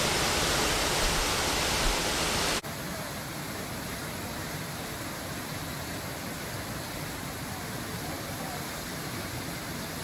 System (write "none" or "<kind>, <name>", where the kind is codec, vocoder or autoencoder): none